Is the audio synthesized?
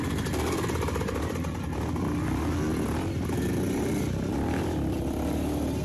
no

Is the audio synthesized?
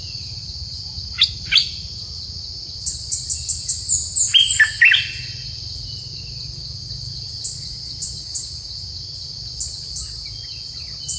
no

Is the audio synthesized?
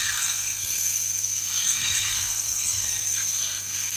yes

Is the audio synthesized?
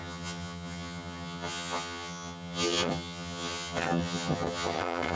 yes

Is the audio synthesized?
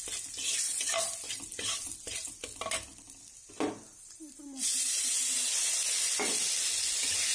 no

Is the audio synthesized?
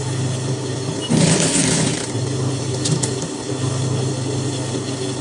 no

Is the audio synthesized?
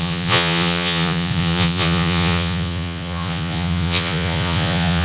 yes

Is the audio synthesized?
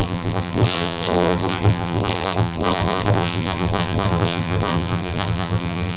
yes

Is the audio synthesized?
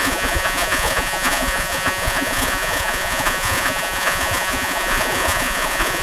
yes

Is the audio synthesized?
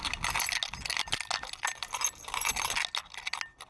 no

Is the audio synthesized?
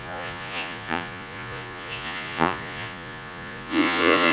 yes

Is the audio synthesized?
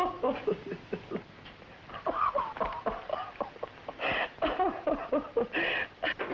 no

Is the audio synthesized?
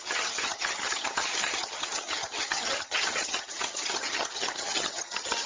yes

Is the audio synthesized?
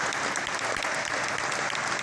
no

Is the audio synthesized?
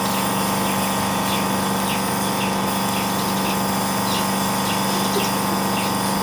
no